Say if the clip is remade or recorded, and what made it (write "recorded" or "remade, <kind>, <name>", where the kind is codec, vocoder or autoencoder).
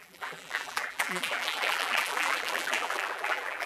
remade, vocoder, BigVGAN v2